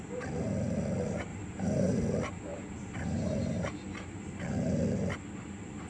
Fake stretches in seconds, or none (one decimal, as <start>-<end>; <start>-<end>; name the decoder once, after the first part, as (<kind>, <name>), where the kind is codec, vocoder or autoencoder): 1.3-2.0 (vocoder, BigVGAN v2); 2.5-4.5